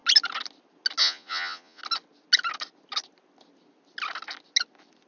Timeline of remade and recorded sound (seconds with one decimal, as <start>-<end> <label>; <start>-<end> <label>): 0.0-1.0 recorded; 1.0-1.8 remade; 1.8-5.1 recorded